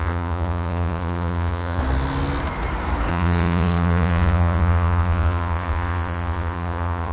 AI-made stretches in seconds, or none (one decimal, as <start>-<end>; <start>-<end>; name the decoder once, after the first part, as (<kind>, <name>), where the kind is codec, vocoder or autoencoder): 0.0-1.8 (vocoder, Vocos); 3.1-7.1